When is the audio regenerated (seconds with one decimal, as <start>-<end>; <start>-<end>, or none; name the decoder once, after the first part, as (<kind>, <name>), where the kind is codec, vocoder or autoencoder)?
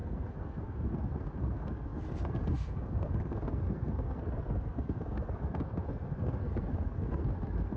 0.0-7.8 (codec, SNAC)